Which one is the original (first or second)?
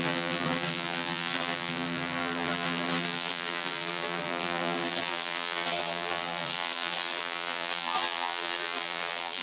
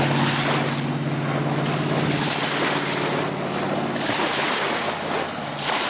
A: second